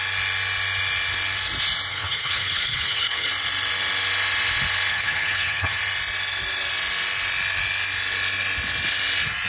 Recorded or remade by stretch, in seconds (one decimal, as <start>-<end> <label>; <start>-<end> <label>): 0.0-1.9 recorded; 1.9-3.3 remade; 3.3-4.9 recorded; 4.9-5.8 remade; 5.8-9.5 recorded